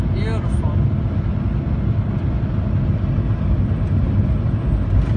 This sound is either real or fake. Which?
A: real